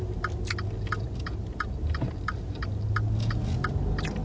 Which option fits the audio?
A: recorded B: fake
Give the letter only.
A